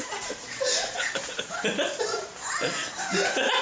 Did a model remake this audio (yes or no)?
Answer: yes